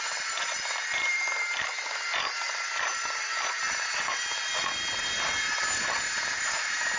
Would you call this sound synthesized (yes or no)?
yes